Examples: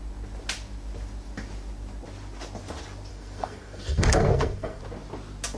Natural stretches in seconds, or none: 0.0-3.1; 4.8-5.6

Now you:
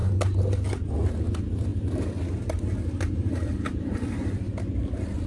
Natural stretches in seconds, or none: 0.0-5.3